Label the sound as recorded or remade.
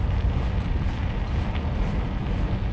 recorded